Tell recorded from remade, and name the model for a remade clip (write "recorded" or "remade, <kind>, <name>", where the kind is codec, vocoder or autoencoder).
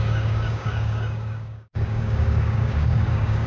remade, codec, DAC